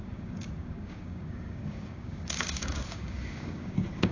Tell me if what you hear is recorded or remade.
remade